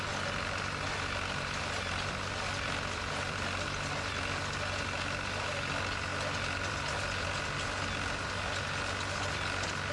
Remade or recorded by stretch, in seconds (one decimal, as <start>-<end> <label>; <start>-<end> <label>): 0.0-9.9 recorded

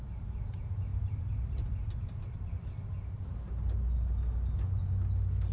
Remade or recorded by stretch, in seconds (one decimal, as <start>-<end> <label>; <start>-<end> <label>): 0.0-0.9 recorded; 0.9-2.2 remade; 2.2-5.5 recorded